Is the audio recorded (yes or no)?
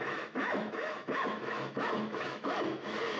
no